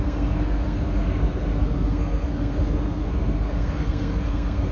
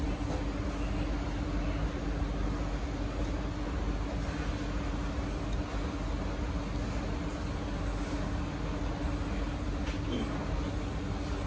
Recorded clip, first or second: second